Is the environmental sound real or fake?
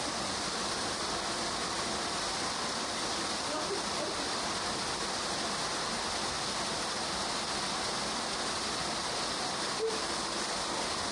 real